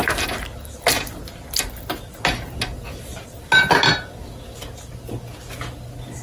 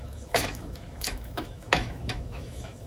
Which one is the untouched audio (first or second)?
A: first